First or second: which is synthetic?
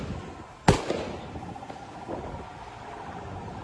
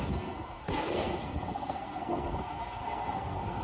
second